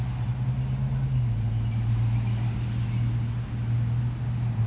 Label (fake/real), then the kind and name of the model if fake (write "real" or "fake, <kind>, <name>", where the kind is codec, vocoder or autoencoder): real